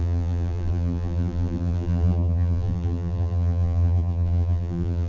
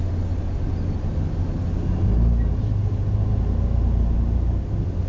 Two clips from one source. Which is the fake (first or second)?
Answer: first